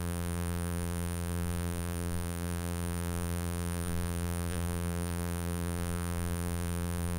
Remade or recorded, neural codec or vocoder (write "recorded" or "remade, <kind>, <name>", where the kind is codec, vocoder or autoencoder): remade, vocoder, BigVGAN v2